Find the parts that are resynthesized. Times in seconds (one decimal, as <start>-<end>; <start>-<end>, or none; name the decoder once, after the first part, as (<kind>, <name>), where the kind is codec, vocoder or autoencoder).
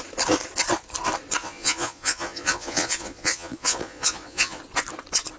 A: 1.4-4.6 (vocoder, Vocos)